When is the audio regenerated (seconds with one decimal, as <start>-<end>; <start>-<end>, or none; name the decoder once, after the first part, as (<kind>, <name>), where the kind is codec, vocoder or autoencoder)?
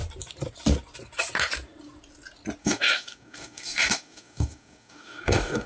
2.6-5.7 (codec, DAC)